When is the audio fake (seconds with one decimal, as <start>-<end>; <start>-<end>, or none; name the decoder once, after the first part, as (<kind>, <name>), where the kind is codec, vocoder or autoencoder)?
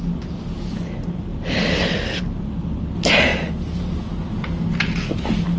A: none